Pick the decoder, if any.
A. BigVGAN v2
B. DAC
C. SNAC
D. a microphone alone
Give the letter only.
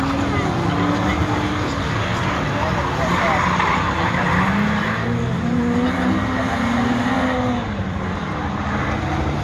D